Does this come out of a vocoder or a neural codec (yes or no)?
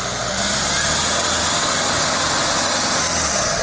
no